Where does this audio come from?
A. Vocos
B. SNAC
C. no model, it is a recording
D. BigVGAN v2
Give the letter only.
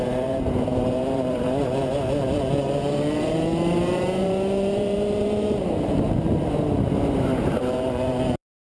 D